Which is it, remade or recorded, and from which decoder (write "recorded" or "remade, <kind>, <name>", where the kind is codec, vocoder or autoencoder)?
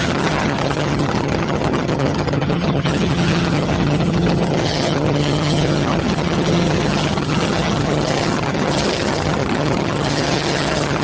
remade, vocoder, HiFi-GAN